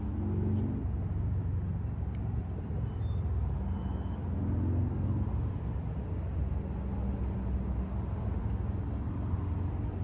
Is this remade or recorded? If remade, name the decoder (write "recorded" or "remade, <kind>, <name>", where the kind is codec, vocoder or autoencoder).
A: recorded